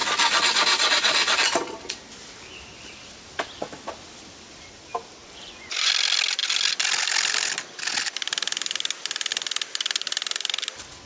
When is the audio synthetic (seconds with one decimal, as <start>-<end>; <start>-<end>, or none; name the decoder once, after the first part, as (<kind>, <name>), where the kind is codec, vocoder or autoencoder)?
5.2-5.9 (vocoder, Vocos)